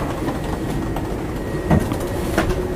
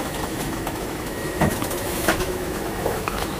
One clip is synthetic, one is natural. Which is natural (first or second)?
first